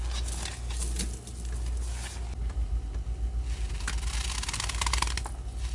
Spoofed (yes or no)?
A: no